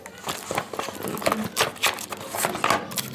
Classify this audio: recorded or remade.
recorded